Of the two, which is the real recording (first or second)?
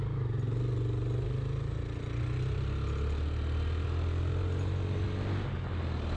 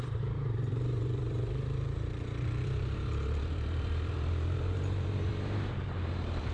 first